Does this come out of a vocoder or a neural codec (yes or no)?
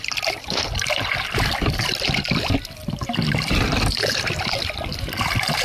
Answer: yes